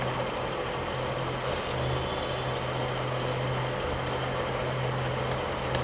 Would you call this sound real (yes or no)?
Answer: yes